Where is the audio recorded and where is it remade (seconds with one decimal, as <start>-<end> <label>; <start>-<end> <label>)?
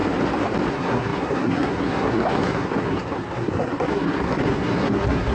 0.0-0.7 recorded; 0.7-5.3 remade